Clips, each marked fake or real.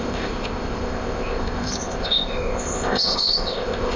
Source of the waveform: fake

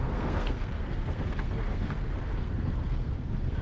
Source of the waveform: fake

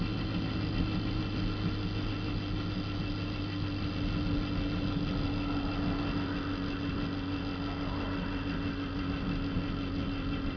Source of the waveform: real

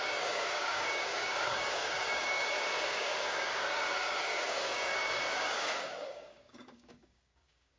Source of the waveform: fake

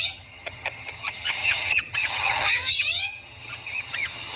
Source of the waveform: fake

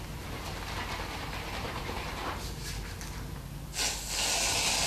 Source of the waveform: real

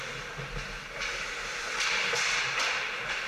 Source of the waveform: real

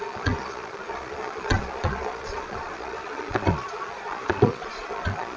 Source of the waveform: fake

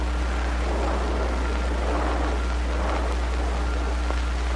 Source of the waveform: real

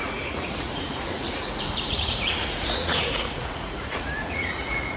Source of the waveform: fake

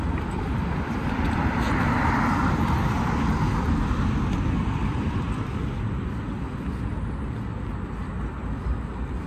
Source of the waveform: real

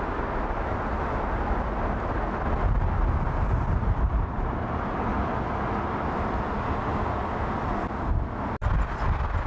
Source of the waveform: real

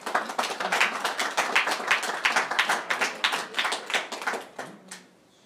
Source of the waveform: real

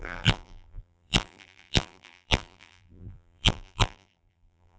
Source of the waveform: fake